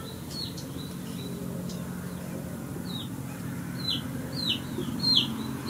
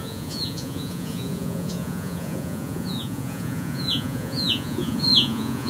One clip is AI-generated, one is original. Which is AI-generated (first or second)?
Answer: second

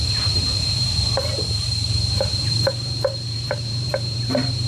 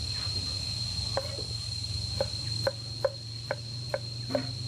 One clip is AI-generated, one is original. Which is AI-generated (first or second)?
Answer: first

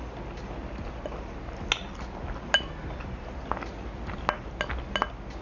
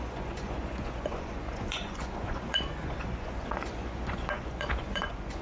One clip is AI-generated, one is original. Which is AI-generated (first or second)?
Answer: second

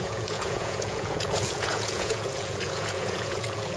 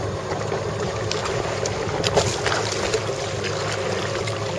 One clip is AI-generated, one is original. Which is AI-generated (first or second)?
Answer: first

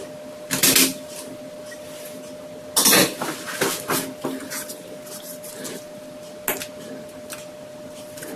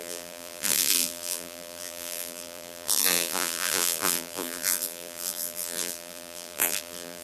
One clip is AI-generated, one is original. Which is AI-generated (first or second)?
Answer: second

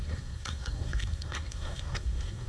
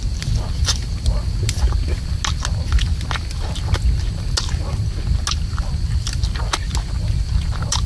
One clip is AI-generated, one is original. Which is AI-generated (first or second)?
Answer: first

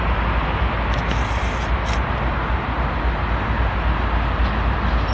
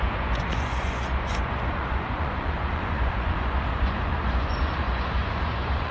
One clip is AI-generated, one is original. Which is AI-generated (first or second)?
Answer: second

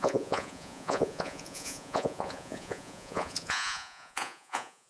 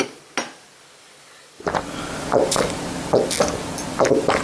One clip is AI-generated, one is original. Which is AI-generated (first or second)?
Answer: first